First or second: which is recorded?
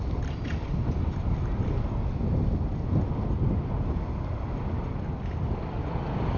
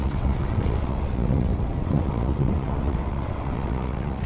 first